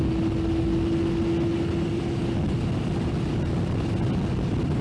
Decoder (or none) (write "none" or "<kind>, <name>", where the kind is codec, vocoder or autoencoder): none